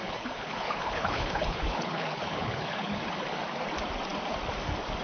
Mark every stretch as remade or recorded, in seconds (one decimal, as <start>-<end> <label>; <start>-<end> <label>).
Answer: 0.0-3.0 remade; 3.0-5.0 recorded